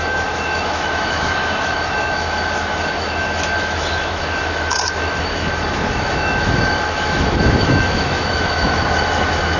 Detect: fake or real fake